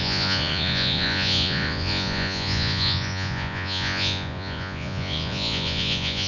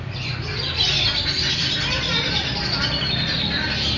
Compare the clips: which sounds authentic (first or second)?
second